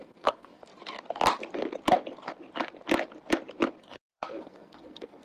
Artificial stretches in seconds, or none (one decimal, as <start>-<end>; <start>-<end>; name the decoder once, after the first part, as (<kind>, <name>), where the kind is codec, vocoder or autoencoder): 0.0-0.7 (codec, SNAC); 3.8-5.2